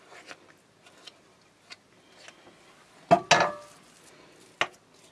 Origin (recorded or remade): recorded